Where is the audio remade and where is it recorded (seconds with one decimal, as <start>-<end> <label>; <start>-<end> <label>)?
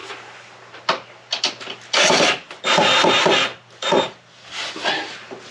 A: 0.0-5.5 recorded